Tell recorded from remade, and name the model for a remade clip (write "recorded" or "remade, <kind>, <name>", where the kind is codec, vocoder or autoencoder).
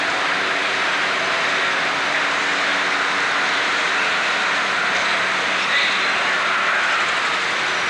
recorded